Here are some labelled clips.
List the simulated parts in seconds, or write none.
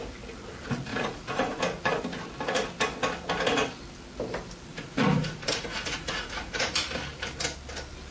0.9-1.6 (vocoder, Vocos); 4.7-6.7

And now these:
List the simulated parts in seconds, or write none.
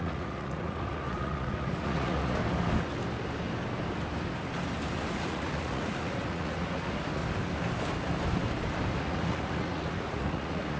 0.0-2.4 (vocoder, Vocos); 5.1-7.2; 9.0-10.8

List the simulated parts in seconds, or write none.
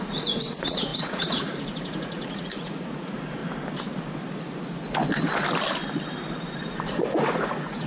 0.0-3.4 (vocoder, Vocos); 6.8-7.9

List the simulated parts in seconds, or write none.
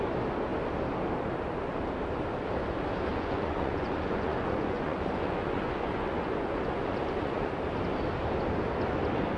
3.1-7.5 (vocoder, Vocos)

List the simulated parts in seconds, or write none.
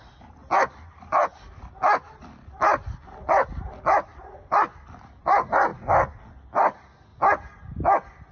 none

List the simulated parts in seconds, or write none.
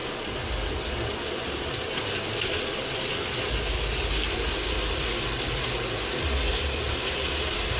none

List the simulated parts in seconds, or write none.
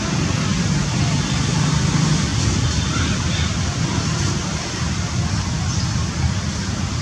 none